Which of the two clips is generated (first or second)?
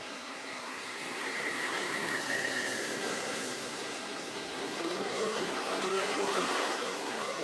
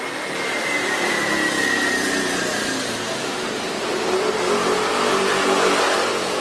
first